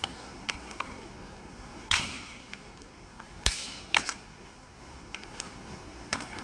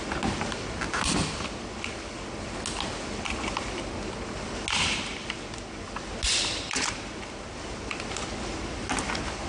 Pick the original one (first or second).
second